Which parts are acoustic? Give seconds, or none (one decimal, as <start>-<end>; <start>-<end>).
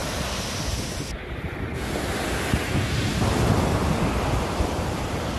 0.0-3.8